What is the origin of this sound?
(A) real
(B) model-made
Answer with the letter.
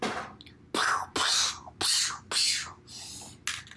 A